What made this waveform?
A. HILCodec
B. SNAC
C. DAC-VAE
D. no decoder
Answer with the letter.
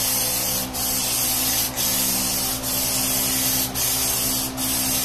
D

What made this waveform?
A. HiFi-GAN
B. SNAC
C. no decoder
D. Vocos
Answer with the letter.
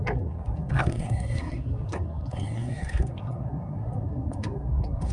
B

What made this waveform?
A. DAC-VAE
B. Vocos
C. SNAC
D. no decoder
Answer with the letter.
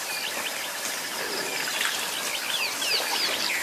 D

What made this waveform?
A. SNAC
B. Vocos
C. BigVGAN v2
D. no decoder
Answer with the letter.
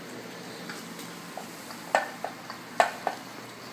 D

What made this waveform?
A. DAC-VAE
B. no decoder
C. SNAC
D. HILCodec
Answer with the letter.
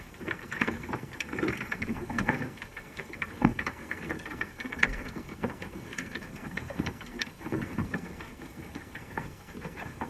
C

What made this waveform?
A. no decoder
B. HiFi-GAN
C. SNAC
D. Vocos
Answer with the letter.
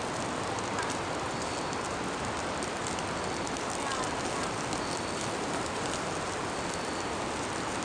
A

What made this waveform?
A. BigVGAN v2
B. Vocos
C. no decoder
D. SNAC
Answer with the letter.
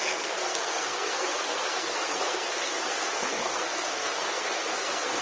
D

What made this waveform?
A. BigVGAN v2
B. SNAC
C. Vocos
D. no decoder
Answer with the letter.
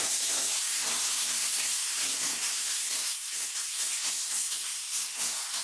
B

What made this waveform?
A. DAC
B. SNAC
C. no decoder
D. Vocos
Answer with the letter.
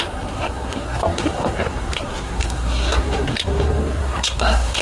B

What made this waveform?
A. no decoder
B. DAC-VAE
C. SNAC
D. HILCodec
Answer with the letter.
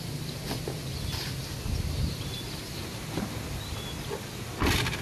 A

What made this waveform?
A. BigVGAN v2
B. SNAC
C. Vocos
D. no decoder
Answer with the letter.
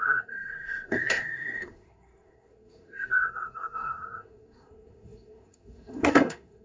B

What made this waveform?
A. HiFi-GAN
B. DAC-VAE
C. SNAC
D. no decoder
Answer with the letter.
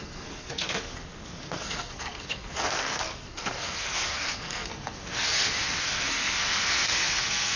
C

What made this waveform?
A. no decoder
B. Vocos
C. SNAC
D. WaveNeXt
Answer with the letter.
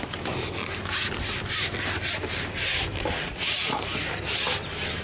A